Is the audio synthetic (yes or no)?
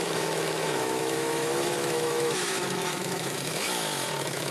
yes